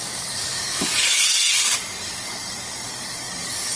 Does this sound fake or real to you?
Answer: fake